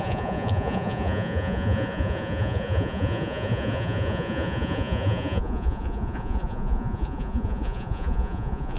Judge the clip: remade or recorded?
remade